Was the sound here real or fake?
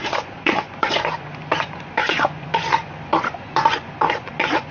fake